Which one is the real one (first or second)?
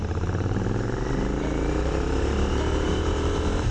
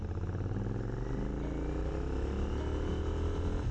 second